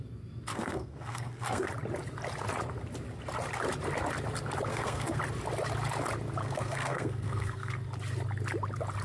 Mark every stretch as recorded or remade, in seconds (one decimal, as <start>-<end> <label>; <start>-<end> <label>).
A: 0.0-0.5 recorded; 0.5-1.7 remade; 1.7-4.7 recorded; 4.7-5.2 remade; 5.2-6.4 recorded; 6.4-7.7 remade; 7.7-9.0 recorded